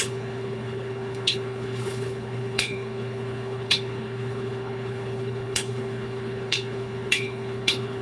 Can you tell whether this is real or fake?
fake